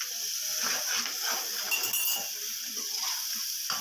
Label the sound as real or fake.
real